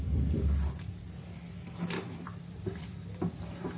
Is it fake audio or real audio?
fake